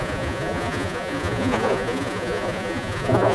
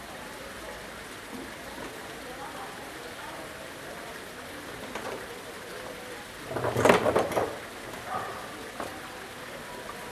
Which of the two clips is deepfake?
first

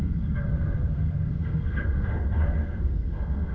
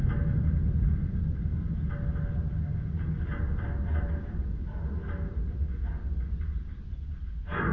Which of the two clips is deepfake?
first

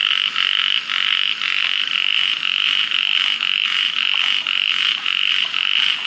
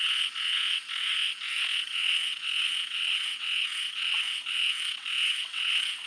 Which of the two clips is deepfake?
second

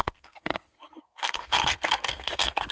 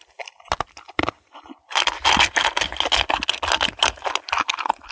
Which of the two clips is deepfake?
first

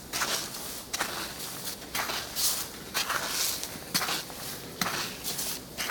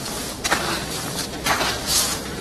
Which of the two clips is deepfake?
second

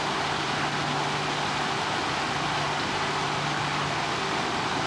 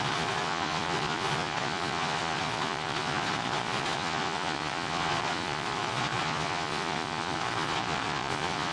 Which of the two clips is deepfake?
second